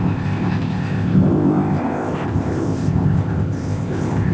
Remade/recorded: remade